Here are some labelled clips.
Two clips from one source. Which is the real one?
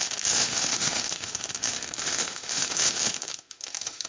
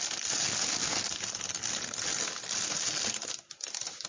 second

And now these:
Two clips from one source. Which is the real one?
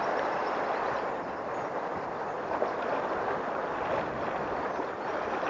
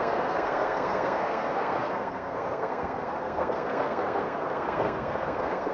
first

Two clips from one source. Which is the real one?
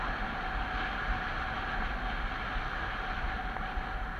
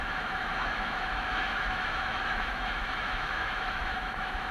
first